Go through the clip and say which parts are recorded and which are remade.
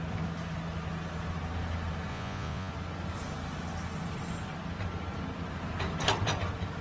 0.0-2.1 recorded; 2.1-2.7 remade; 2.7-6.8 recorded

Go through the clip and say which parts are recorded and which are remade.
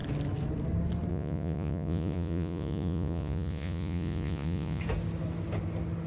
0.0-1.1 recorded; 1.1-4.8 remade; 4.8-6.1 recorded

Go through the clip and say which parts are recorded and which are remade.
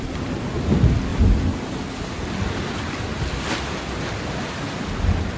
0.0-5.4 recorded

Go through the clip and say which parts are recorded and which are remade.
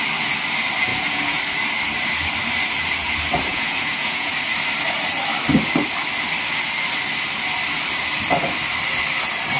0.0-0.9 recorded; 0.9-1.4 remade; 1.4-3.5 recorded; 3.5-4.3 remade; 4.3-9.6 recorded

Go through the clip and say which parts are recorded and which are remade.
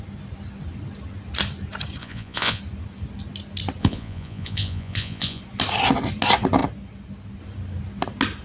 0.0-2.0 recorded; 2.0-2.6 remade; 2.6-3.8 recorded; 3.8-5.4 remade; 5.4-8.4 recorded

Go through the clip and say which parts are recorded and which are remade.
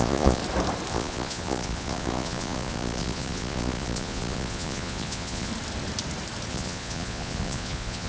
0.0-0.4 remade; 0.4-0.9 recorded; 0.9-5.5 remade; 5.5-6.5 recorded; 6.5-8.1 remade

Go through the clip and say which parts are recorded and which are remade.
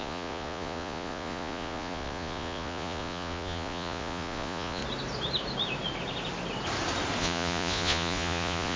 0.0-4.8 remade; 4.8-7.2 recorded; 7.2-8.8 remade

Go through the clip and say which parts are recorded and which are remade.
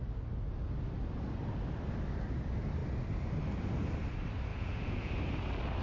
0.0-4.5 recorded; 4.5-5.1 remade; 5.1-5.8 recorded